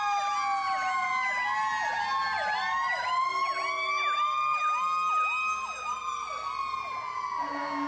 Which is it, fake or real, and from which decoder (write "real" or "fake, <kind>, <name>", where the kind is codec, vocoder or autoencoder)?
real